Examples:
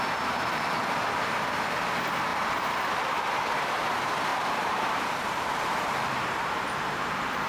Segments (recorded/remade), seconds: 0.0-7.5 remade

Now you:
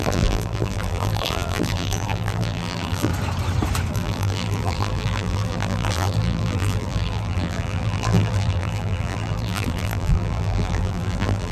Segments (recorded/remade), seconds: 0.0-3.1 remade; 3.1-3.9 recorded; 3.9-11.5 remade

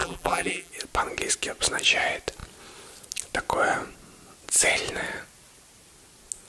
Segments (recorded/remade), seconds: 0.0-0.7 remade; 0.7-6.5 recorded